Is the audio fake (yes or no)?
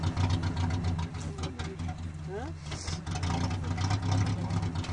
no